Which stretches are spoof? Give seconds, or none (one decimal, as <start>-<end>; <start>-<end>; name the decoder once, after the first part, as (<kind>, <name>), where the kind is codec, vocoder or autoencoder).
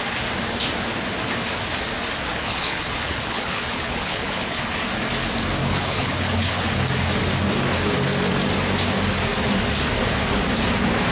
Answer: 2.3-4.8 (codec, HILCodec); 5.6-6.8